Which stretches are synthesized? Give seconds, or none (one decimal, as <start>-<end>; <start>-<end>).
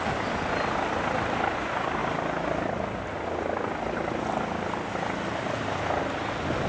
none